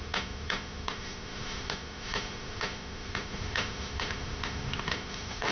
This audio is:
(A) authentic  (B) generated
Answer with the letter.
B